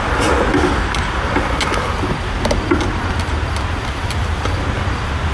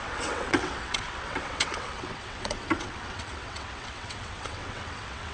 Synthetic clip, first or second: second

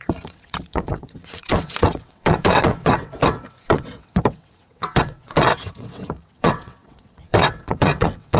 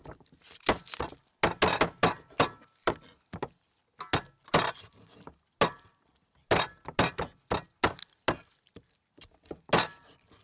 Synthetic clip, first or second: first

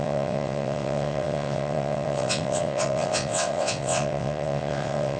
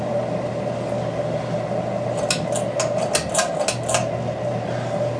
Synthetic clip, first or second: first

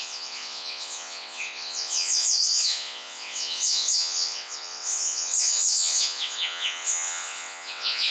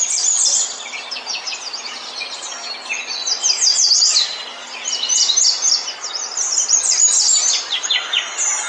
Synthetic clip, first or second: first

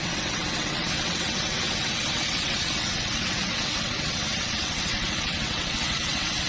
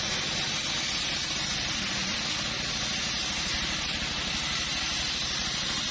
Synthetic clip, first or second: first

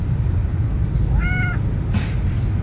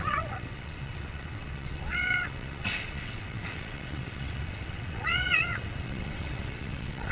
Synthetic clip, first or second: second